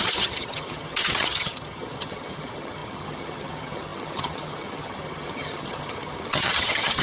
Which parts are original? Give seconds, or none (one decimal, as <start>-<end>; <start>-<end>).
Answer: none

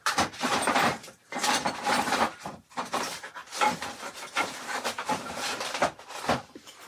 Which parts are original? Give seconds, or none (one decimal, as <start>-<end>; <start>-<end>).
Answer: 3.4-4.0; 5.8-6.4

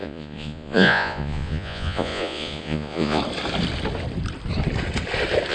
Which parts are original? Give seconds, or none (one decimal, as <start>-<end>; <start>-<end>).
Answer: 3.2-5.5

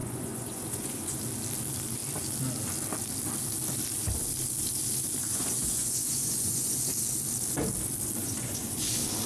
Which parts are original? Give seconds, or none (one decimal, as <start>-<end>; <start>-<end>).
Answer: 1.2-5.3; 6.9-8.2; 8.9-9.3

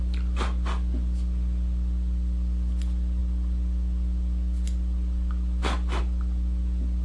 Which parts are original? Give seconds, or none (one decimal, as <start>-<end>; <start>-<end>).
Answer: 0.0-7.0

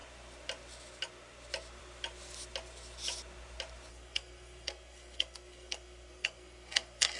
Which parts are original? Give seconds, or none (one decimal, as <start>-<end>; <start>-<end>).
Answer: 0.0-3.9

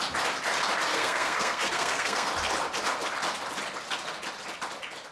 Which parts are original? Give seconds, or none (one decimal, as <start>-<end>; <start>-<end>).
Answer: 0.0-0.9; 2.3-5.1